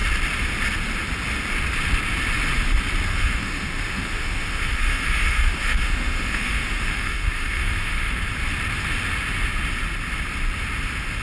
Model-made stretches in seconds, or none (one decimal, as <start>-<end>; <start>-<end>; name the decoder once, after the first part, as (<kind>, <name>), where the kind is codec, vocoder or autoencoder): 3.1-8.2 (autoencoder, DAC-VAE)